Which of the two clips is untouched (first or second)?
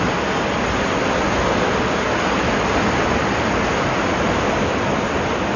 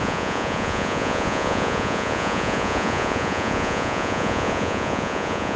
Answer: first